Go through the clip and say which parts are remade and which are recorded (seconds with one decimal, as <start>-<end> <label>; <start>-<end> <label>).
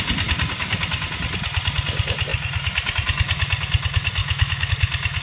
0.0-4.2 recorded; 4.2-4.7 remade; 4.7-5.2 recorded